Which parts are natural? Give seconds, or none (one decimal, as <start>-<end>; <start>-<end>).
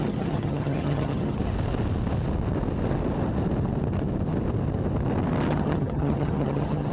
1.4-5.5